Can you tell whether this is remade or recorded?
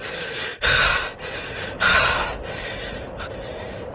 recorded